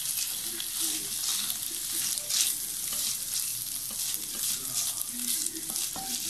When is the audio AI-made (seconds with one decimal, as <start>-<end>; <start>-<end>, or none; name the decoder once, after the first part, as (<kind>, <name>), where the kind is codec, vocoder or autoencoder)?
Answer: none